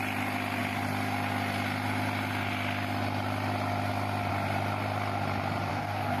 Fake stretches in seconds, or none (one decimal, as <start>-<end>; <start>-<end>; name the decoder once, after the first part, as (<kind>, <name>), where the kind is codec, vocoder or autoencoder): 5.7-6.2 (codec, DAC)